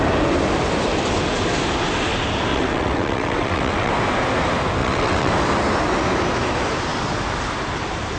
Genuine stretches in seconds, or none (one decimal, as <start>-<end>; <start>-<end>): 0.0-2.5; 3.9-4.8; 5.3-8.2